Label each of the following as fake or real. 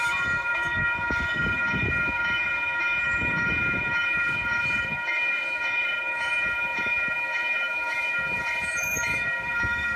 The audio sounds fake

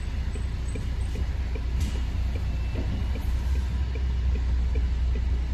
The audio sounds real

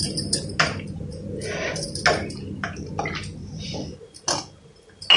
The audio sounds real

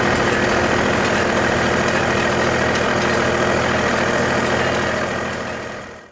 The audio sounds real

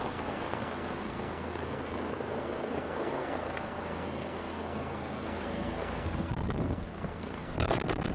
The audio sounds fake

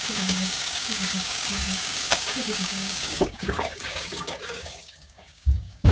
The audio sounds fake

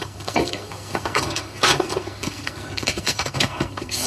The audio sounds fake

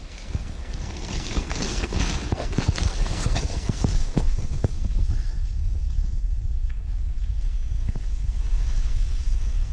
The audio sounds fake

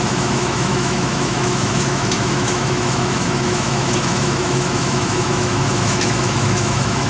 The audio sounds fake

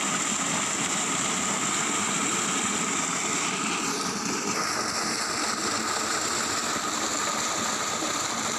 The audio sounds real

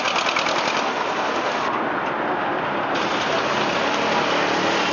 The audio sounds real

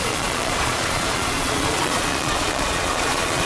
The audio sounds fake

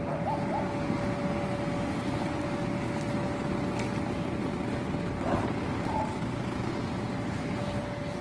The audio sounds real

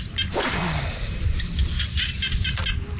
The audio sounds real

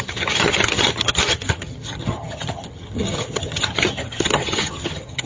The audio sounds fake